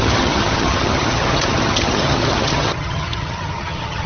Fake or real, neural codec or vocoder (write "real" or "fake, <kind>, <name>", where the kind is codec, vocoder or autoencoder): fake, vocoder, HiFi-GAN